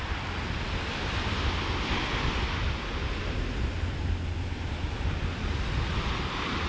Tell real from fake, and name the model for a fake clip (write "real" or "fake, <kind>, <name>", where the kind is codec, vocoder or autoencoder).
real